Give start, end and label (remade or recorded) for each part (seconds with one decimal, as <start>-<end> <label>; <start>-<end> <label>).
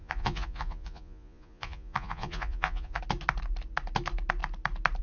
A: 0.0-3.0 remade; 3.0-5.0 recorded